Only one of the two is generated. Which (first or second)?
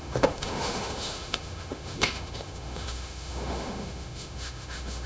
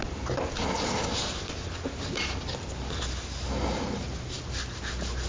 first